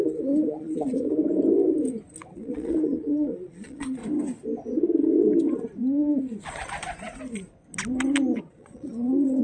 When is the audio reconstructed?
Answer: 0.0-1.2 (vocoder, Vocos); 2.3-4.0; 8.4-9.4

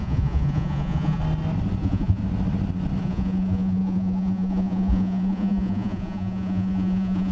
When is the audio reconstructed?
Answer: 0.0-1.2 (vocoder, Vocos); 1.8-2.2; 3.0-7.3

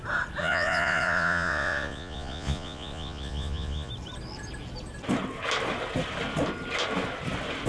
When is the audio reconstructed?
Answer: 0.4-3.9 (vocoder, Vocos)

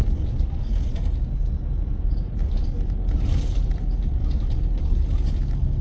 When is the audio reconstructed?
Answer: none